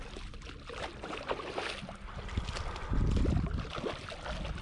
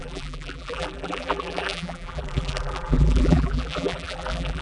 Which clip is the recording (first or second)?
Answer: first